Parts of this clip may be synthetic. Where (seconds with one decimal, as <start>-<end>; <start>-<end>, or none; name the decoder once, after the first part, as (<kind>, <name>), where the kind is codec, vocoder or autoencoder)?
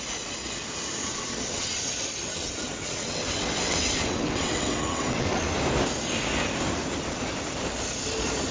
1.0-5.5 (vocoder, WaveNeXt)